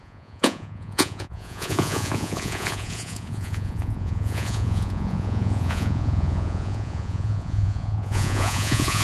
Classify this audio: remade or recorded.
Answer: remade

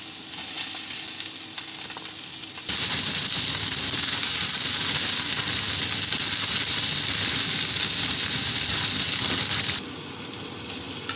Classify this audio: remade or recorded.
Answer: recorded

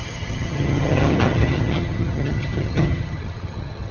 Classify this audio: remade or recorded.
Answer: remade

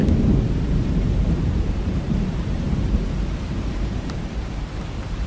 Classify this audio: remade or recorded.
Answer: remade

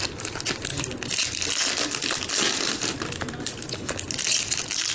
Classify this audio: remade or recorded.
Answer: recorded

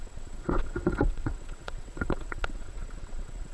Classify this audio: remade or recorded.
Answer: remade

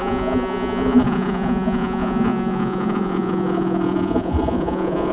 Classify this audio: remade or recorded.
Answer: remade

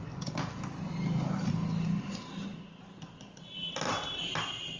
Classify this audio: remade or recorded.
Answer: recorded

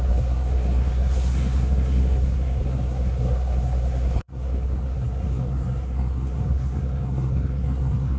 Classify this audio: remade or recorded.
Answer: remade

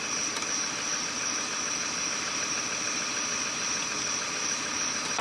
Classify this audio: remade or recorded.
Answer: recorded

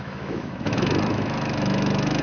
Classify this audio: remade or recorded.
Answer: remade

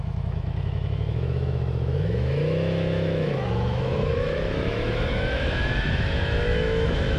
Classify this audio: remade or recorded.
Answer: remade